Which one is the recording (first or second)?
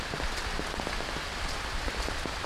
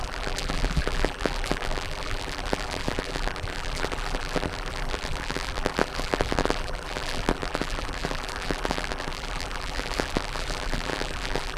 first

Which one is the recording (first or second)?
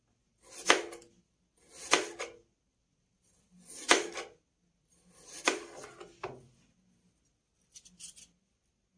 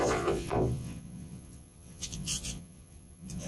first